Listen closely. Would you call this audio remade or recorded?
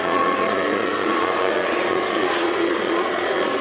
remade